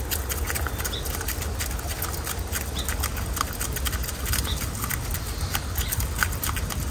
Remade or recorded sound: recorded